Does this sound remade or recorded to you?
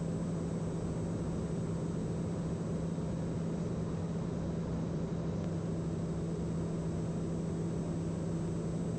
recorded